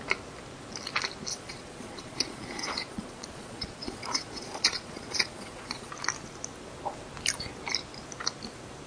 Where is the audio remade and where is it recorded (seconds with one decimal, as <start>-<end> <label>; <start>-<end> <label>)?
0.0-1.3 recorded; 1.3-5.9 remade; 5.9-8.9 recorded